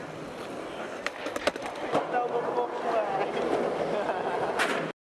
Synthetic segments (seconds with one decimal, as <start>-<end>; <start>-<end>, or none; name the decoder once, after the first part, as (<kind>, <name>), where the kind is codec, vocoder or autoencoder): none